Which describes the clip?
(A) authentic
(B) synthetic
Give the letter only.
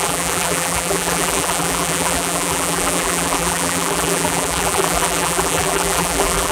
B